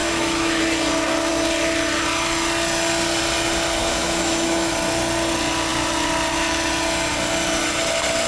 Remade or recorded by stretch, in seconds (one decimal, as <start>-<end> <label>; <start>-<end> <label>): 0.0-0.6 remade; 0.6-3.8 recorded; 3.8-4.7 remade; 4.7-8.3 recorded